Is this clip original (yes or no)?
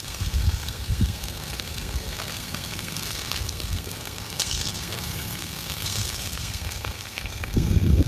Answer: no